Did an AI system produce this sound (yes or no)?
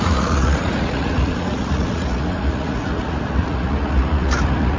yes